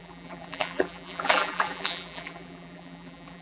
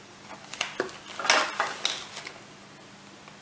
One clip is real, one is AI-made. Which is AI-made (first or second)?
first